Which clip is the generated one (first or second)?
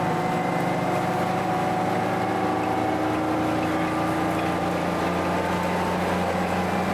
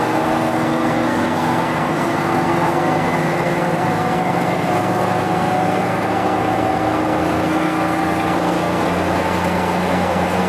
second